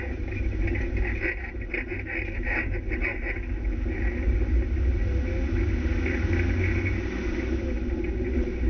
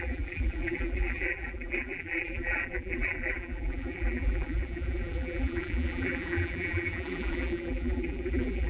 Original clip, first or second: first